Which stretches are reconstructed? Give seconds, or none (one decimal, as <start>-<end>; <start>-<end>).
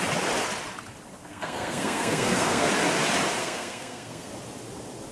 1.2-2.7; 3.4-4.3